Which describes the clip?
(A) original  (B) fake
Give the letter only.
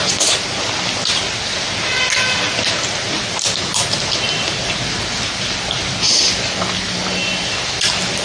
A